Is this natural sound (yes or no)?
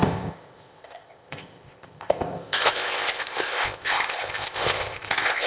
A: no